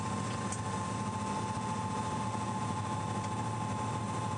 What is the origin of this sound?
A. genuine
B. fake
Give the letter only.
A